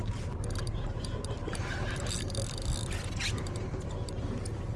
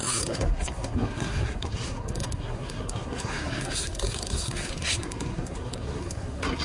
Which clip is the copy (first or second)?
second